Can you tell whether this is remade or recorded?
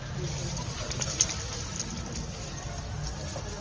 recorded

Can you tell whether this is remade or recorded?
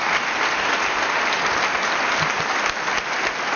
recorded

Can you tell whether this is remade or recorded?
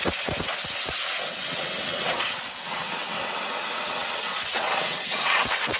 remade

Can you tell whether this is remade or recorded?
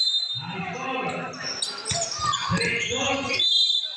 recorded